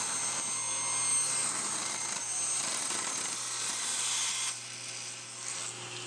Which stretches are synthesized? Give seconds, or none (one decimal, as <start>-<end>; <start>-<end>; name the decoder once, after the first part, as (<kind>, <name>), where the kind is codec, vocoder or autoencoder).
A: 1.1-4.0 (vocoder, BigVGAN v2)